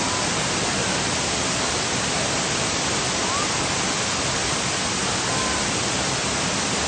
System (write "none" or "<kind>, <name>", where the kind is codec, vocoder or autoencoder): none